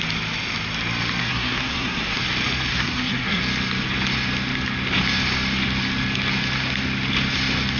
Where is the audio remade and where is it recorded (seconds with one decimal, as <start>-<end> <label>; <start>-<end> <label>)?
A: 0.0-1.2 recorded; 1.2-2.2 remade; 2.2-2.7 recorded; 2.7-3.4 remade; 3.4-7.8 recorded